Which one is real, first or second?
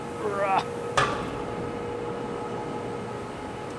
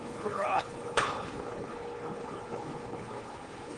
first